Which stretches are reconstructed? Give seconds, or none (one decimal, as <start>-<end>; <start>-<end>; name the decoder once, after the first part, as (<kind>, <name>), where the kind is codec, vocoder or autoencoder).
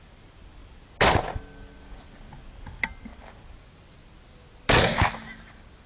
none